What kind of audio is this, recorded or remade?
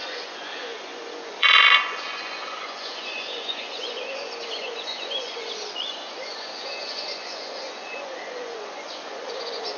remade